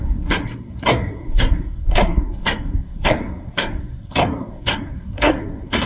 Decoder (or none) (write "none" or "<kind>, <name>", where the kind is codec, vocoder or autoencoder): codec, SNAC